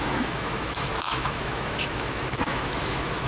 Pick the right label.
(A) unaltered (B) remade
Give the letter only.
B